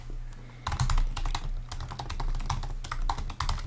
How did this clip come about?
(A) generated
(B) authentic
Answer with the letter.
B